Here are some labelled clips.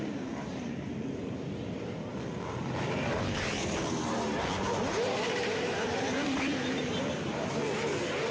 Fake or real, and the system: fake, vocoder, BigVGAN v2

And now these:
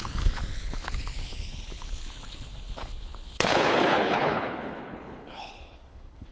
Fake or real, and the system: fake, codec, HILCodec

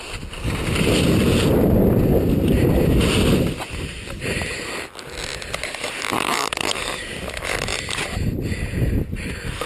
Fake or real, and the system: real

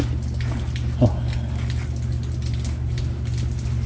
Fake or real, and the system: real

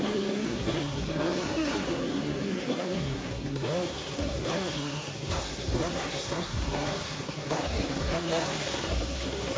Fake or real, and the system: fake, codec, SNAC